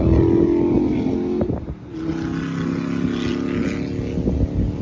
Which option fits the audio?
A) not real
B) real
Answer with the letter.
B